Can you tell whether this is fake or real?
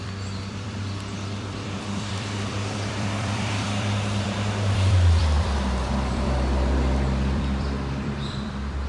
fake